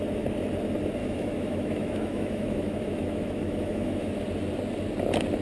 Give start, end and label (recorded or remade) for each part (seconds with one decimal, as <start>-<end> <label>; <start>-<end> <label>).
0.0-1.0 recorded; 1.0-4.2 remade; 4.2-5.4 recorded